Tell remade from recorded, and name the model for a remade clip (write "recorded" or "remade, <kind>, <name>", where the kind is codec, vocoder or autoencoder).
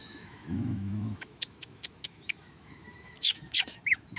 remade, autoencoder, DAC-VAE